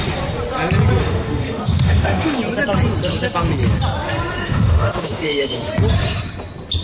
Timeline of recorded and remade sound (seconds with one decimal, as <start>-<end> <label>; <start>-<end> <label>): 0.0-1.0 recorded; 1.0-2.4 remade; 2.4-4.4 recorded; 4.4-5.7 remade; 5.7-6.8 recorded